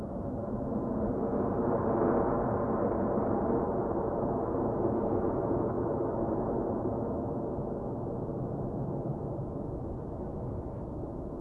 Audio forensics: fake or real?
real